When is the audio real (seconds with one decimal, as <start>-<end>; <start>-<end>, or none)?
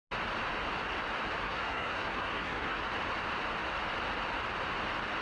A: 0.0-1.4; 2.8-5.2